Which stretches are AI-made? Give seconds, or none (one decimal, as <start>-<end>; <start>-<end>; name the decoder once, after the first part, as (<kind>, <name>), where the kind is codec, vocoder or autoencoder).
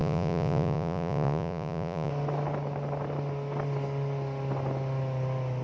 0.0-2.1 (vocoder, Vocos)